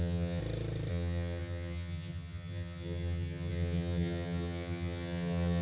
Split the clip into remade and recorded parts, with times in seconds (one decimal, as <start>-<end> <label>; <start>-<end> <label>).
0.0-0.4 remade; 0.4-0.9 recorded; 0.9-5.6 remade